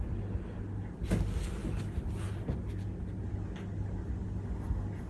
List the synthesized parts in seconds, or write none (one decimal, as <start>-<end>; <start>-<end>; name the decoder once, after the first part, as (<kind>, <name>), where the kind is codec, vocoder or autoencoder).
none